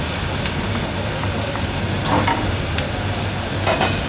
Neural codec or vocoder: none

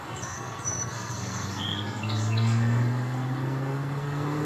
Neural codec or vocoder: codec, SNAC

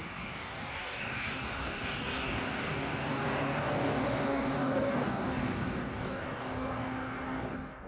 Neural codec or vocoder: codec, DAC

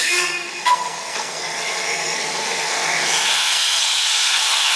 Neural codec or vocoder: codec, SNAC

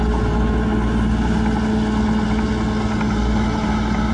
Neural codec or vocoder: none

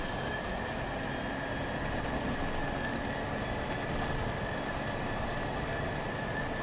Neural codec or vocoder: none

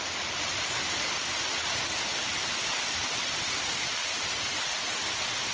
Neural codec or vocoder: none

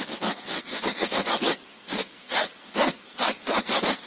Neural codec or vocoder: codec, SNAC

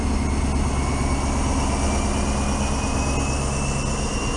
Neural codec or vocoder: none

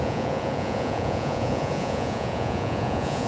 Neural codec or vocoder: vocoder, Vocos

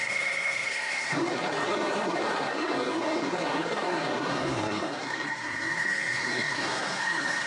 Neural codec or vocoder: codec, SNAC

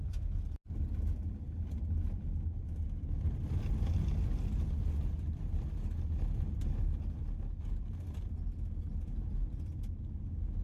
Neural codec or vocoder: none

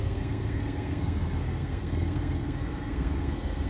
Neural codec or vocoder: codec, SNAC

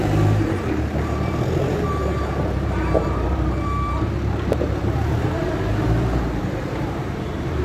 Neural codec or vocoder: vocoder, BigVGAN v2